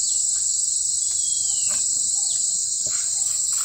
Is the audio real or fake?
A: real